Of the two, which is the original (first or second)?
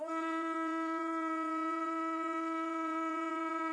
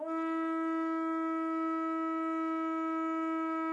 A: second